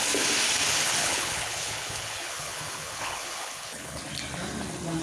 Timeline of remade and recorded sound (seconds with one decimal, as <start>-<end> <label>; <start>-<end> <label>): 0.0-1.0 recorded; 1.0-4.0 remade; 4.0-5.0 recorded

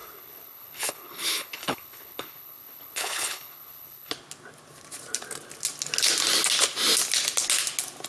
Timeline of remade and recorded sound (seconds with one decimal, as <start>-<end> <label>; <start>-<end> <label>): 0.0-4.1 remade; 4.1-8.1 recorded